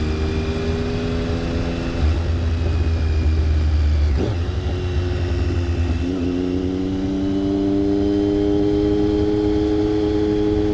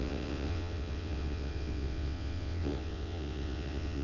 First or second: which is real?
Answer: first